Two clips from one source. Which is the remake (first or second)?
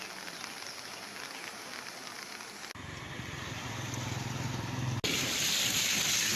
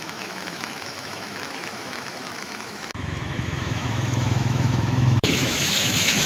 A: second